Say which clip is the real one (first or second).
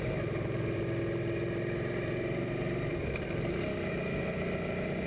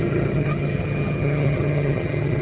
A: first